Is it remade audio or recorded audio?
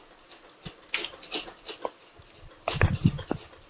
recorded